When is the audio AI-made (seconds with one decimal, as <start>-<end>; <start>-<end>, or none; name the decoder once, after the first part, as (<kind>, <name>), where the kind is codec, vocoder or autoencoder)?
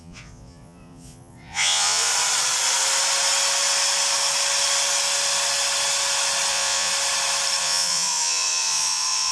0.0-2.1 (vocoder, Vocos); 6.5-6.9; 7.6-9.3